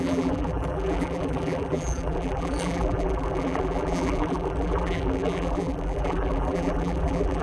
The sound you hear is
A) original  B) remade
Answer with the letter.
B